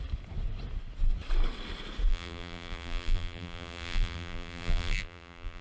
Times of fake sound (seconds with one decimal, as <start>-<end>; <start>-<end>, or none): 2.1-5.6